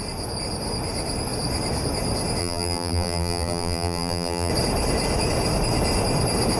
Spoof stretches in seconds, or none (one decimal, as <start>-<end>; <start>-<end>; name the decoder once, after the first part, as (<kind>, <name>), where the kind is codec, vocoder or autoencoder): 2.4-4.5 (vocoder, BigVGAN v2)